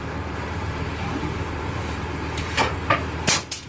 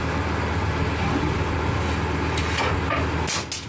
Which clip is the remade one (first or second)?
first